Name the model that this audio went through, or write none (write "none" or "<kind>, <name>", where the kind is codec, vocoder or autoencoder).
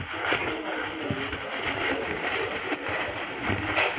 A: none